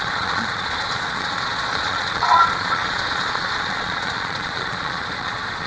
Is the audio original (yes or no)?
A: no